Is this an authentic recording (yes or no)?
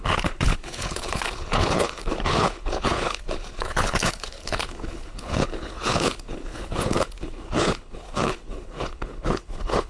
no